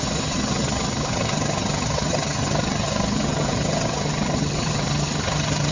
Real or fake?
fake